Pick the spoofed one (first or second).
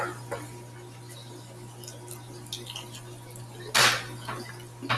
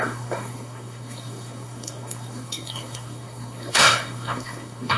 second